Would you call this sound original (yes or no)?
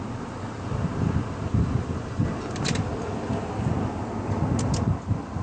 yes